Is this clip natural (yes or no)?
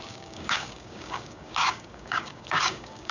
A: no